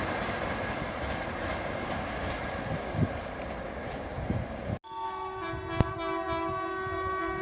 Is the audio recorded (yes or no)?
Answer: yes